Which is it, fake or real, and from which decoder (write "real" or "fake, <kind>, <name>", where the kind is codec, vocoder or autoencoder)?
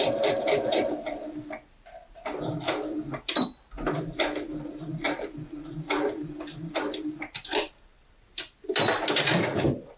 real